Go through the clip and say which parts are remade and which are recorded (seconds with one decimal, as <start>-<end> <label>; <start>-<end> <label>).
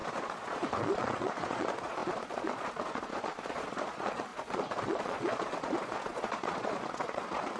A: 0.0-7.6 remade